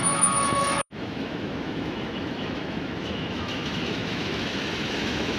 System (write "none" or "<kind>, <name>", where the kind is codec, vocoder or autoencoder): autoencoder, DAC-VAE